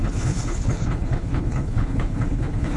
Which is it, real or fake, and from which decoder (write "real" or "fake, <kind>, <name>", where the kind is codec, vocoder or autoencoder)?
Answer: fake, codec, HILCodec